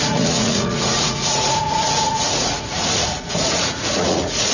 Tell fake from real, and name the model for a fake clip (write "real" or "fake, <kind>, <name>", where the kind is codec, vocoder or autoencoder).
fake, vocoder, Vocos